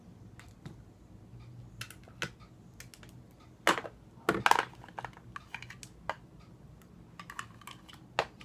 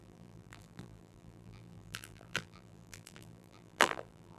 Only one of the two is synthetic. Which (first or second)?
second